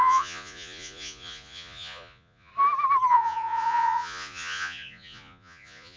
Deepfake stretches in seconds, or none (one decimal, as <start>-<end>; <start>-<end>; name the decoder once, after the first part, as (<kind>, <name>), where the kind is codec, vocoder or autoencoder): 0.0-2.5 (vocoder, Vocos); 3.1-6.0